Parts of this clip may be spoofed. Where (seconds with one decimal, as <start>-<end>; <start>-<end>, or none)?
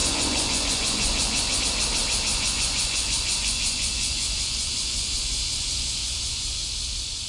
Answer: 0.0-1.6; 2.3-6.7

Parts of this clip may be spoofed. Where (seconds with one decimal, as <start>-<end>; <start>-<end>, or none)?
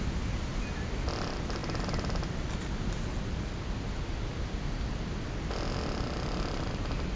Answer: none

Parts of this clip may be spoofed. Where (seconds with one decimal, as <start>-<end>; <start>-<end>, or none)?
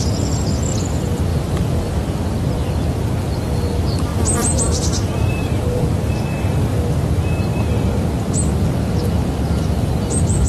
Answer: 1.3-2.0; 4.1-6.1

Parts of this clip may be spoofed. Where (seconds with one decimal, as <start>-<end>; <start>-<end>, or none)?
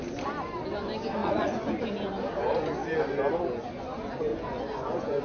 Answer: 1.2-1.7; 4.3-5.2